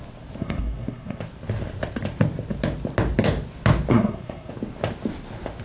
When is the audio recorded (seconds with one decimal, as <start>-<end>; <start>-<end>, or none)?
0.0-0.4; 1.2-3.9; 4.5-5.6